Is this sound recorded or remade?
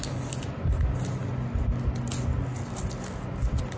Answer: recorded